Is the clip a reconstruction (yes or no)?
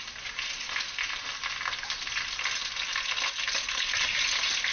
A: no